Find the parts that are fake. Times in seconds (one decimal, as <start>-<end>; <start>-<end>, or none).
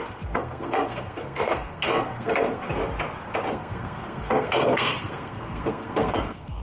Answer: 0.0-2.8; 3.5-6.6